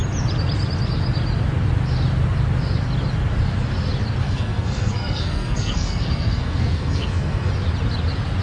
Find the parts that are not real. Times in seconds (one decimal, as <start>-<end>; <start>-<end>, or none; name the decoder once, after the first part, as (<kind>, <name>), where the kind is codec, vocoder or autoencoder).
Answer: 4.2-7.5 (codec, SNAC)